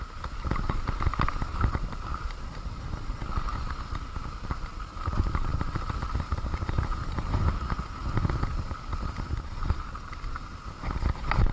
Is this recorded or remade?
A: recorded